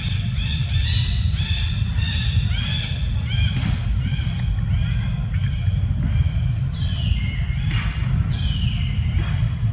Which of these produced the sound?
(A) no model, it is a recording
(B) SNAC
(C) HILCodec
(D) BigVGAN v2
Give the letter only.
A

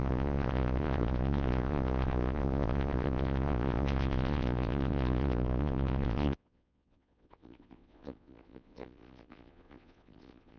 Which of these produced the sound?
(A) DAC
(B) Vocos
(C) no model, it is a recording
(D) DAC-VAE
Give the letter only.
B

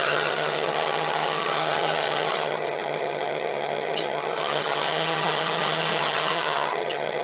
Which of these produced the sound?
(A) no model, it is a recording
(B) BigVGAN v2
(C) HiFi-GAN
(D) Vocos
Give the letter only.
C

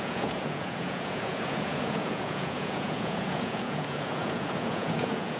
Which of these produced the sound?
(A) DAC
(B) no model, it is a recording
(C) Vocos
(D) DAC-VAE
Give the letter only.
C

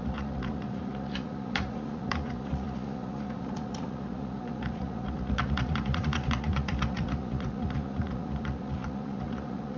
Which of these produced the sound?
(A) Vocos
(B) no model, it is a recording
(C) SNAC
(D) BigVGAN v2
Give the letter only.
A